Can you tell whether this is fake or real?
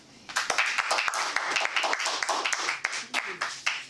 real